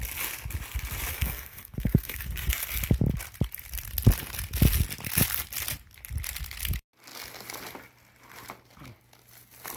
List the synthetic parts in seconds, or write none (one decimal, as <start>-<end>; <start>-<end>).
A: 1.1-2.8